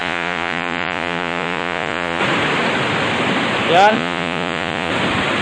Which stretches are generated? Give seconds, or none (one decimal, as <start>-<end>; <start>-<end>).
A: 0.0-2.2; 3.9-4.9